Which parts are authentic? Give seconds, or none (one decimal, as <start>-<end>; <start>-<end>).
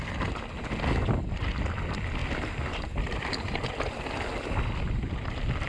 0.0-5.7